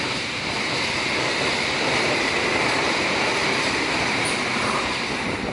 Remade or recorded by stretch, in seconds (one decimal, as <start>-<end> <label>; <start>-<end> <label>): 0.0-3.4 recorded; 3.4-5.5 remade